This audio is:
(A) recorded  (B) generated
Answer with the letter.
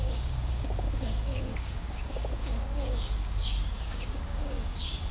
B